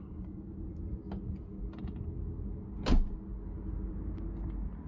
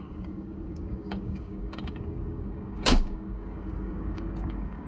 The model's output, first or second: second